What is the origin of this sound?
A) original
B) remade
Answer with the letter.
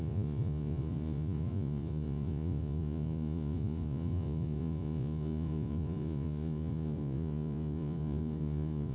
B